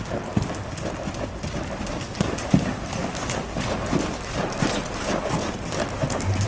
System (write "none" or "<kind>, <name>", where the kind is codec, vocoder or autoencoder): none